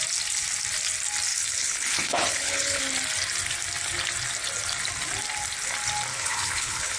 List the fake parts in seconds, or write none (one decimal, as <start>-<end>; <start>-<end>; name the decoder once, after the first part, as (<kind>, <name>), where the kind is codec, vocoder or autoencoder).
1.3-2.8 (codec, HILCodec); 6.1-7.0